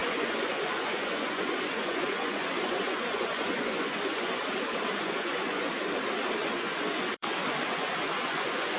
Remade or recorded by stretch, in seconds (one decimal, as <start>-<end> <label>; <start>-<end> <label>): 0.0-4.4 remade; 4.4-4.9 recorded; 4.9-5.7 remade; 5.7-6.4 recorded; 6.4-8.8 remade